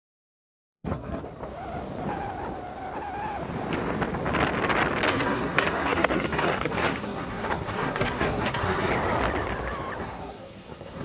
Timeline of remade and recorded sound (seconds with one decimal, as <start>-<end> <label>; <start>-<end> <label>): 0.0-1.2 remade; 1.2-5.1 recorded; 5.1-8.9 remade; 8.9-10.0 recorded; 10.0-11.0 remade